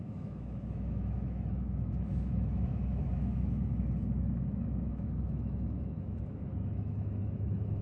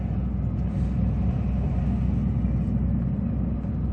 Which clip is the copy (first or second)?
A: first